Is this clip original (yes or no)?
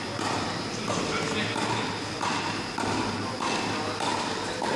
yes